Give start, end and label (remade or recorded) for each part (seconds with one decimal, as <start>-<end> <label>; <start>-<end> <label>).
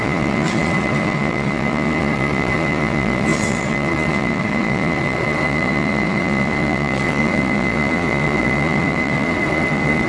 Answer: 0.0-10.1 remade